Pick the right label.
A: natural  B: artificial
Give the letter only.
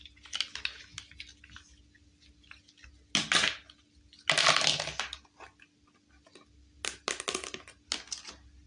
A